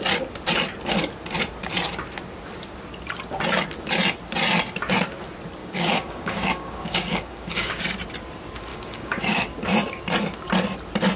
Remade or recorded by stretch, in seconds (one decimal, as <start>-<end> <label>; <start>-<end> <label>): 0.0-5.6 recorded; 5.6-7.8 remade; 7.8-8.7 recorded; 8.7-9.4 remade; 9.4-11.2 recorded